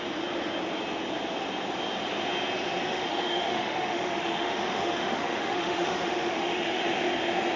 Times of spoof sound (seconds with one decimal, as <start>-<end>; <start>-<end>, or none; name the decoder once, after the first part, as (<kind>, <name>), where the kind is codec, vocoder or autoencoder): 2.9-6.8 (autoencoder, DAC-VAE)